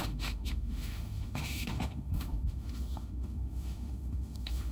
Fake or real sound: fake